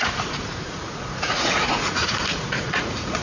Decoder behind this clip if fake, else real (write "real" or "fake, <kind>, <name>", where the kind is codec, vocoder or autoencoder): fake, vocoder, Vocos